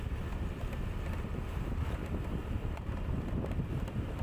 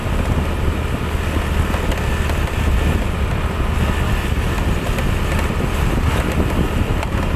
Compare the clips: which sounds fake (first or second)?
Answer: first